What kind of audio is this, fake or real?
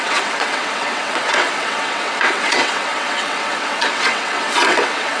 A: fake